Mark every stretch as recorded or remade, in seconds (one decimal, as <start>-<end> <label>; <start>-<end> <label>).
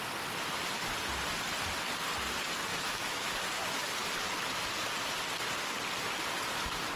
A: 0.0-2.7 recorded; 2.7-3.3 remade; 3.3-7.0 recorded